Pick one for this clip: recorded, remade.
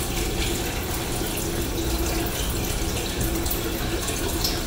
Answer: recorded